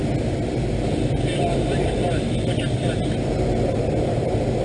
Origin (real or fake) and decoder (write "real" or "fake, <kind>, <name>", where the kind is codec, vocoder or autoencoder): real